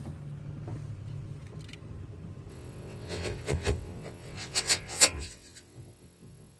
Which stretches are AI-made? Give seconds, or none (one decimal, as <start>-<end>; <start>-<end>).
2.5-6.6